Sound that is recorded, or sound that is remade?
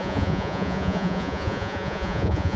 remade